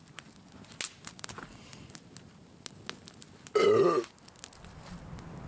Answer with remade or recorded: recorded